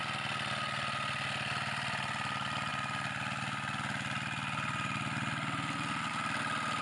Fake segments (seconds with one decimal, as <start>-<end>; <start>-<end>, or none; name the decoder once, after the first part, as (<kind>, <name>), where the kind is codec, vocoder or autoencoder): none